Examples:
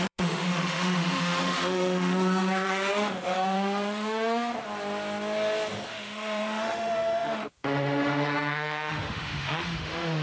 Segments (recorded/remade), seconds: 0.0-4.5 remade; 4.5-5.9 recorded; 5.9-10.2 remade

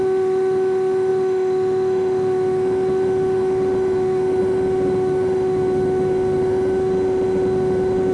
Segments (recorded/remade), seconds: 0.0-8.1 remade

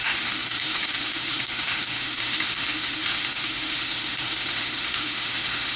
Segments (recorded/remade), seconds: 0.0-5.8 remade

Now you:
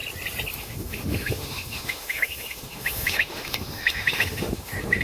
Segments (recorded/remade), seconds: 0.0-0.6 recorded; 0.6-5.0 remade

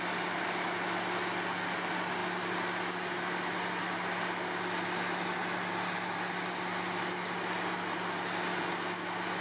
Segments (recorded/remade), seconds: 0.0-9.4 recorded

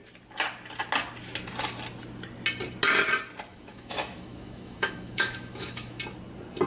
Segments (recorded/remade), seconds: 0.0-3.5 recorded; 3.5-6.0 remade; 6.0-6.7 recorded

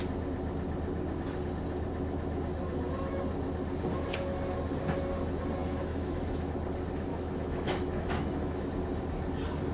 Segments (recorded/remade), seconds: 0.0-5.6 recorded; 5.6-6.5 remade; 6.5-7.1 recorded; 7.1-8.6 remade; 8.6-9.7 recorded